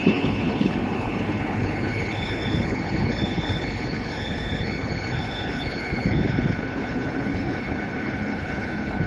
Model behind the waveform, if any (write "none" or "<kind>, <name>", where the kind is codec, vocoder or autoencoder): codec, HILCodec